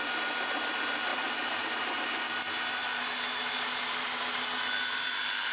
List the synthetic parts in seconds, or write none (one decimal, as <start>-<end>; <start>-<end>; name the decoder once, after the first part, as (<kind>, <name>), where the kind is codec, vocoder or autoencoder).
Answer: none